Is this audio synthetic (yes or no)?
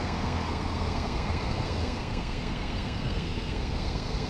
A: yes